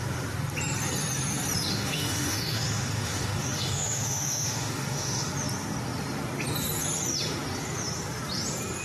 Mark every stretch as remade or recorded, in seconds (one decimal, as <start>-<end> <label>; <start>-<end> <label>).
0.0-1.7 recorded; 1.7-5.3 remade; 5.3-8.8 recorded